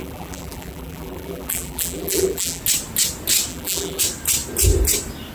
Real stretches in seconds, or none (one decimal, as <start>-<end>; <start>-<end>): 2.6-3.5; 4.0-5.3